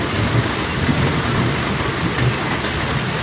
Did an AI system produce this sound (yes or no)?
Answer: no